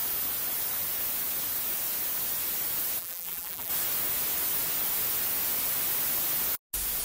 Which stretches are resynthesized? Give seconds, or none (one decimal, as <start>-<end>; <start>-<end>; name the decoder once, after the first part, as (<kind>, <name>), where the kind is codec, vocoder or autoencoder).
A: 3.0-3.7 (vocoder, BigVGAN v2)